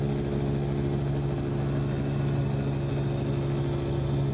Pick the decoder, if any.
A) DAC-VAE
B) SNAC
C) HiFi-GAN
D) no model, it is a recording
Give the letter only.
D